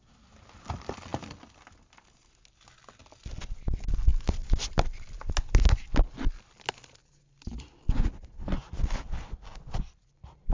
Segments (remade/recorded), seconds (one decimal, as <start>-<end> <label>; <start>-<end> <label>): 0.0-10.5 recorded